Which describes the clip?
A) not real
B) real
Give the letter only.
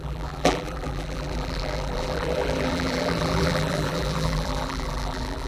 A